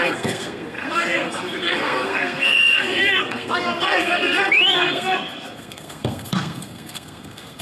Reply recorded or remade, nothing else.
remade